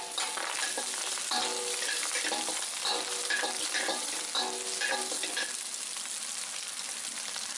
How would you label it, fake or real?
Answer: real